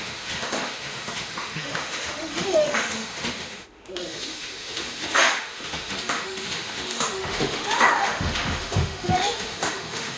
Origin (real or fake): fake